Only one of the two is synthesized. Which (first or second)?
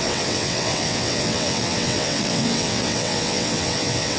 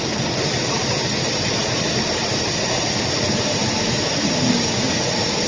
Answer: first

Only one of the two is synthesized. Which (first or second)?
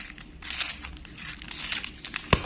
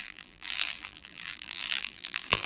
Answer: second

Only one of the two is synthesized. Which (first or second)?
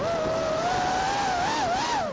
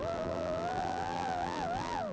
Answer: second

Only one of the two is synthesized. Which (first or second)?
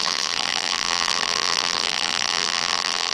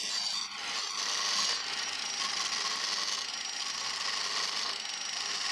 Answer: first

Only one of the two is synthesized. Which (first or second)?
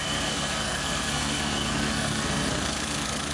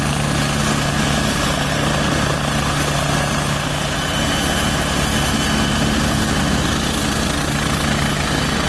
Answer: first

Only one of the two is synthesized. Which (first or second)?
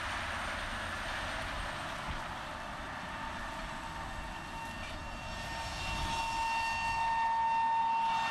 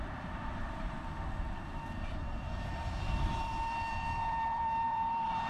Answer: second